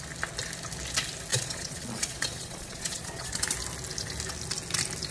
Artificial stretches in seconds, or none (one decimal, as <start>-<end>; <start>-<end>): 1.3-3.4